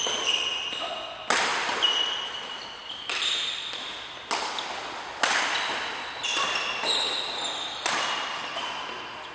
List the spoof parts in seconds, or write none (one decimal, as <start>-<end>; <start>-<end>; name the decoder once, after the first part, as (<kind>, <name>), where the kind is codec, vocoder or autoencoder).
none